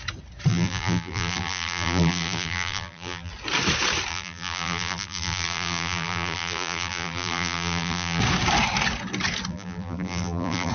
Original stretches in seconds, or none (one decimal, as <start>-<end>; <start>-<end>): 0.0-0.5; 3.3-4.1; 8.2-9.5